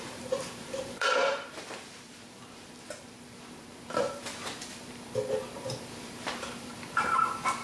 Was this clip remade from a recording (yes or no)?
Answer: yes